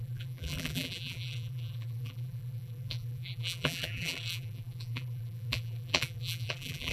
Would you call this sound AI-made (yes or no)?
yes